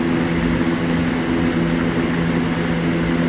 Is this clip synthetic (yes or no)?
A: no